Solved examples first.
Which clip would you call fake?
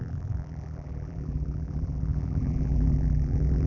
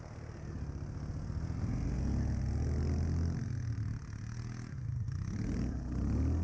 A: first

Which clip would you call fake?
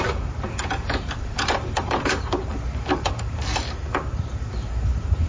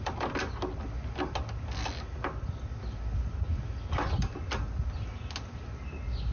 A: first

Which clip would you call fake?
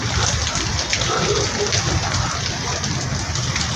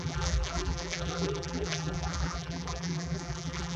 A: second